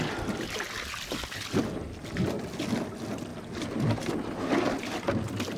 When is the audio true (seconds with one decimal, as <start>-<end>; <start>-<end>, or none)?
0.0-5.6